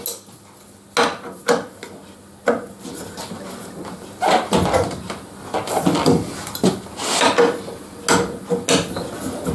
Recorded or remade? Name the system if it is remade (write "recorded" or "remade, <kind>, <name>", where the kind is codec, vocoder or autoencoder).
recorded